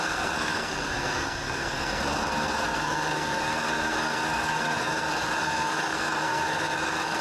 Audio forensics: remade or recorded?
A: remade